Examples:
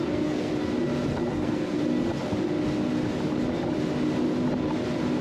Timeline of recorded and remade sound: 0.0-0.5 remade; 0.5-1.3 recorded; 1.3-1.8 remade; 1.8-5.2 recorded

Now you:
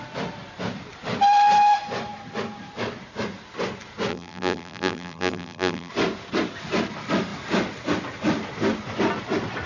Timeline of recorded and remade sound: 0.0-4.1 recorded; 4.1-5.9 remade; 5.9-9.7 recorded

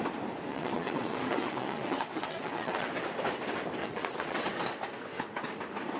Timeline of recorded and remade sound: 0.0-0.5 recorded; 0.5-2.9 remade; 2.9-3.8 recorded; 3.8-4.5 remade; 4.5-6.0 recorded

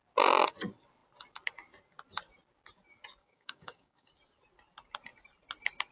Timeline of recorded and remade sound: 0.0-3.2 recorded; 3.2-4.1 remade; 4.1-5.9 recorded

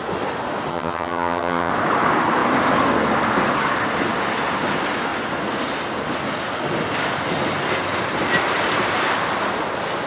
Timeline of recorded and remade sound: 0.0-0.7 recorded; 0.7-1.7 remade; 1.7-10.1 recorded

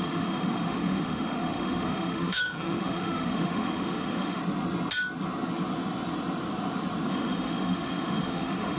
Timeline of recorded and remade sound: 0.0-4.4 remade; 4.4-7.1 recorded; 7.1-8.8 remade

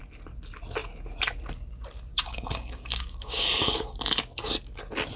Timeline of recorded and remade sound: 0.0-2.1 recorded; 2.1-4.0 remade; 4.0-5.2 recorded

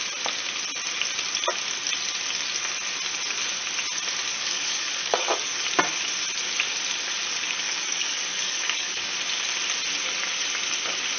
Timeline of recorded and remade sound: 0.0-4.3 recorded; 4.3-5.6 remade; 5.6-7.3 recorded; 7.3-9.1 remade; 9.1-11.2 recorded